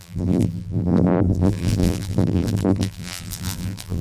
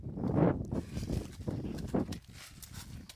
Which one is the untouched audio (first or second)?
second